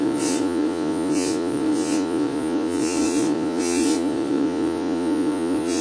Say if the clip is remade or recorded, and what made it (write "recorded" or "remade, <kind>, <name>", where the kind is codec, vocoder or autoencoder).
remade, vocoder, Vocos